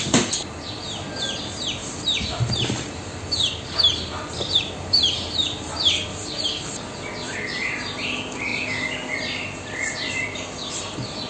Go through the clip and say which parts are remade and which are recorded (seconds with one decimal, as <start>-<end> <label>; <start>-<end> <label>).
0.0-1.8 recorded; 1.8-6.5 remade; 6.5-8.5 recorded; 8.5-10.7 remade; 10.7-11.3 recorded